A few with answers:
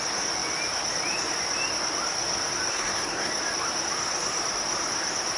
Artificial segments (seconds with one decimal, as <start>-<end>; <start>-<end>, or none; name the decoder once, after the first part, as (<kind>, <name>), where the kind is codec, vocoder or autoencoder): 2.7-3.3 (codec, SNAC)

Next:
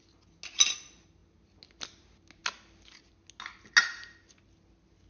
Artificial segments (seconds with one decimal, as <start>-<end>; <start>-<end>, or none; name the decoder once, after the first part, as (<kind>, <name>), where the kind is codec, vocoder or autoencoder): none

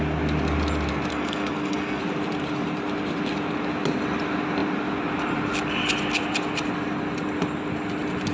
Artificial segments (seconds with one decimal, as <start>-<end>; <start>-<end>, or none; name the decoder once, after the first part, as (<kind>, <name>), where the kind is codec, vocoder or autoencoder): 1.1-2.0 (codec, SNAC)

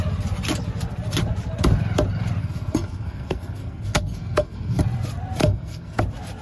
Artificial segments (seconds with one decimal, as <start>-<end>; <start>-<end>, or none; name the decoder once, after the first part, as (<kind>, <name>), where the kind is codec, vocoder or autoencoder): 2.4-4.8 (codec, SNAC); 5.4-6.0